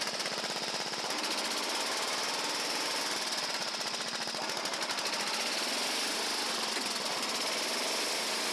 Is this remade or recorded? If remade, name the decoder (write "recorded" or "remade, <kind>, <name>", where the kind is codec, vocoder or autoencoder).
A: recorded